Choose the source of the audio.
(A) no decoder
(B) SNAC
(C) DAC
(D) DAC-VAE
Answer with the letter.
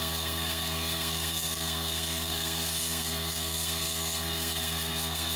B